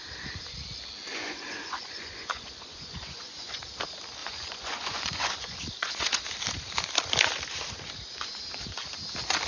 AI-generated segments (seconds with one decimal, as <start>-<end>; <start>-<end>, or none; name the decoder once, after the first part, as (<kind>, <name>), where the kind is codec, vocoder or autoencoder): 1.1-3.6 (vocoder, Vocos); 4.2-6.2